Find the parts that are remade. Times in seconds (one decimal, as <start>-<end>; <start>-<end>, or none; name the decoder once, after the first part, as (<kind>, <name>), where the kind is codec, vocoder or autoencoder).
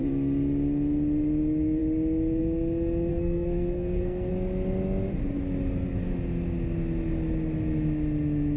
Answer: 3.1-4.3 (codec, SNAC)